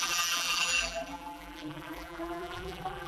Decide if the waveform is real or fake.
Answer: fake